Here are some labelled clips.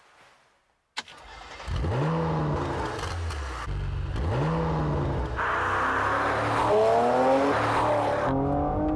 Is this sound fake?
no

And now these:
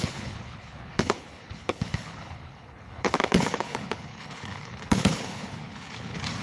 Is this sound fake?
yes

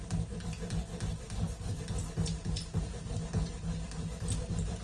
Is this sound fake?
no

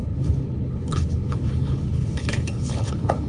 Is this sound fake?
yes